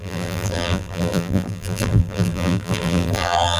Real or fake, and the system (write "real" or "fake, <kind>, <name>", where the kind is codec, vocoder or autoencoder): fake, vocoder, BigVGAN v2